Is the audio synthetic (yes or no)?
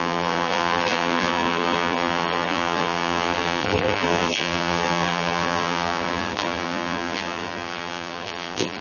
yes